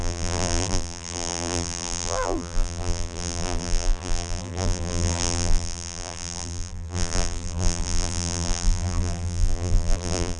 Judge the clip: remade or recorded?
remade